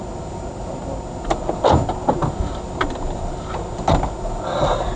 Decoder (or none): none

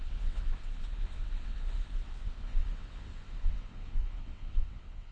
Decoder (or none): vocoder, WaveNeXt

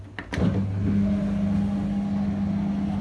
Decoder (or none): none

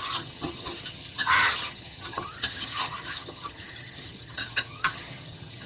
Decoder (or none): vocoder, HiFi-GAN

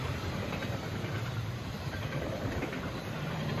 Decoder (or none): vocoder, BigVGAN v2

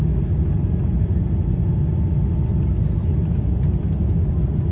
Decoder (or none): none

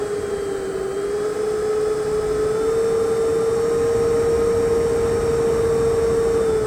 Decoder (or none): none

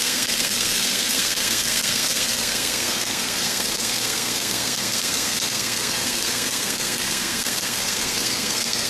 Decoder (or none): codec, SNAC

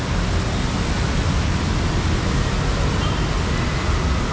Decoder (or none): none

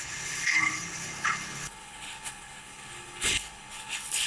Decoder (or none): codec, HILCodec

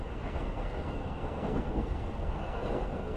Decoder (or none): codec, SNAC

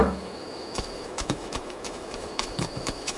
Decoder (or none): autoencoder, DAC-VAE